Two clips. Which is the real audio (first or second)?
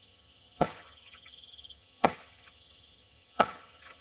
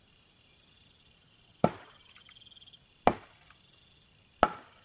second